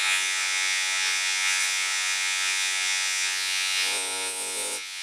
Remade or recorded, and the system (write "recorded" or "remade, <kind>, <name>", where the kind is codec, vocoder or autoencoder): remade, vocoder, Vocos